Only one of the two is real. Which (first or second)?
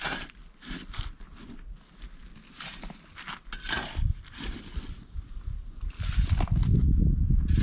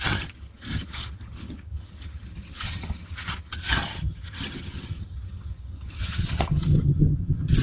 first